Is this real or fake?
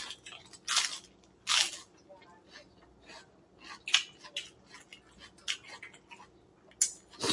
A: real